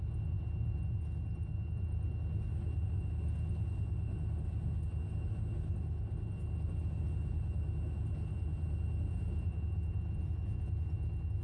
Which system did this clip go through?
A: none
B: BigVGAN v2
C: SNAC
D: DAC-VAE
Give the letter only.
A